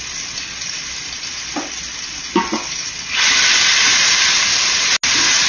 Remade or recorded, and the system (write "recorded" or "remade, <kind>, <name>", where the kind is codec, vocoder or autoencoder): recorded